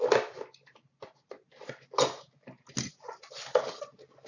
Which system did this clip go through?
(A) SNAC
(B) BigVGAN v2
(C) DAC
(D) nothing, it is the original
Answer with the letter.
D